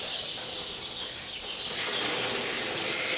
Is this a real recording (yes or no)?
yes